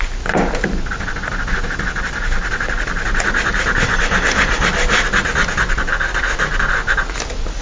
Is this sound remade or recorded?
recorded